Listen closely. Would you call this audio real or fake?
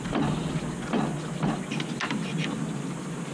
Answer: real